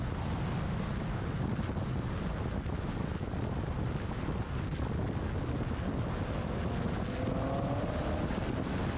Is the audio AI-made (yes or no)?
no